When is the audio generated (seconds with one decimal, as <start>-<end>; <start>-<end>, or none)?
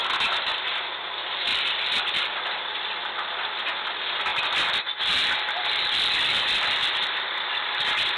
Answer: 1.5-3.6; 4.3-8.2